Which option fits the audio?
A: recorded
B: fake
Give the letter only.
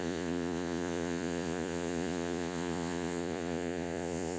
B